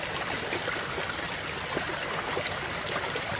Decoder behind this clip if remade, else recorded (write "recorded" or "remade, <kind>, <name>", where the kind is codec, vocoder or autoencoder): recorded